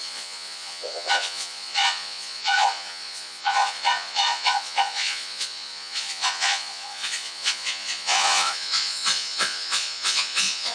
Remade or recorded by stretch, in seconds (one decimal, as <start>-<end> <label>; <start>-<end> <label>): 0.0-10.7 remade